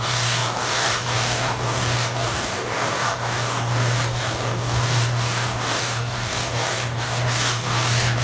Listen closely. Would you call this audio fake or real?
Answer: fake